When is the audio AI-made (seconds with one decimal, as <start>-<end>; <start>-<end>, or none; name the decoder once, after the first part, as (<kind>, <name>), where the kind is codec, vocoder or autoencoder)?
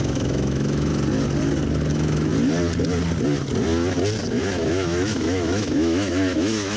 0.0-0.9 (autoencoder, DAC-VAE); 1.9-2.3; 4.3-6.8